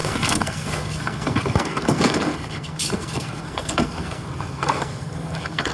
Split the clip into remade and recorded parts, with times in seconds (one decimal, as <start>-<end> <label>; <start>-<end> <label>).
0.0-5.7 remade